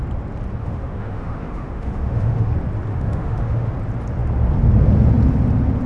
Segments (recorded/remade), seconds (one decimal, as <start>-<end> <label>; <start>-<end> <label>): 0.0-0.6 recorded; 0.6-2.5 remade; 2.5-2.9 recorded; 2.9-3.7 remade; 3.7-5.9 recorded